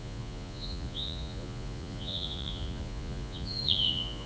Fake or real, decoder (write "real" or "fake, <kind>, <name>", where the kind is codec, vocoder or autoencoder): fake, vocoder, Vocos